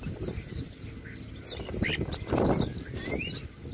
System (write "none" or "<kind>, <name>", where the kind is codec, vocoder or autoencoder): none